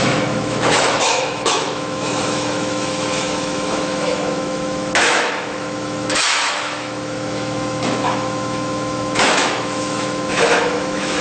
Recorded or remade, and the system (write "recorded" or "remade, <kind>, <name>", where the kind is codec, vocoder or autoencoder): remade, autoencoder, DAC-VAE